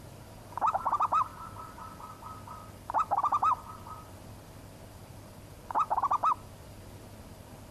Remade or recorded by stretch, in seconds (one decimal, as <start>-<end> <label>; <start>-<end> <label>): 0.0-6.2 remade; 6.2-7.2 recorded; 7.2-7.7 remade